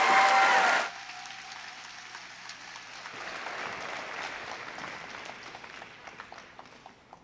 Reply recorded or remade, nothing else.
recorded